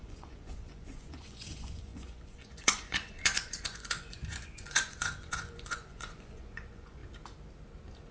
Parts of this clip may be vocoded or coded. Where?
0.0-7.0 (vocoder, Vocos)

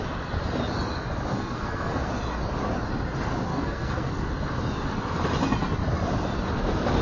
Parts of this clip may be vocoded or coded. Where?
1.3-2.1 (codec, SNAC); 3.5-4.1

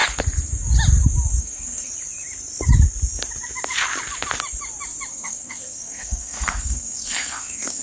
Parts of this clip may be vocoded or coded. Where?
1.4-1.9 (codec, SNAC); 5.1-7.8

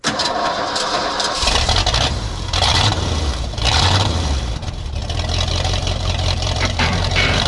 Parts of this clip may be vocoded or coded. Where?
0.0-5.0 (vocoder, BigVGAN v2); 5.5-7.5